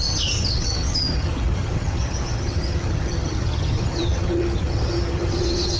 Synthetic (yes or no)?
yes